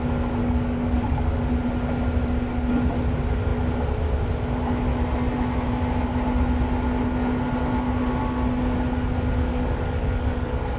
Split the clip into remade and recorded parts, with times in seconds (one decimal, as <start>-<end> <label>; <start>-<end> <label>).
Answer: 0.0-0.4 recorded; 0.4-1.5 remade; 1.5-9.5 recorded; 9.5-10.8 remade